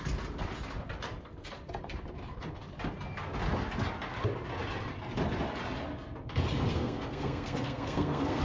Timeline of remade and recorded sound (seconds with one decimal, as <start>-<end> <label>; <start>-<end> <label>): 0.0-6.7 recorded; 6.7-8.4 remade